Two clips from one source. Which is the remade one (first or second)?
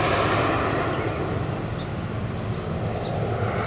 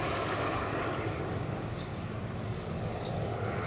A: second